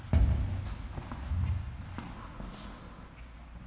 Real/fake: real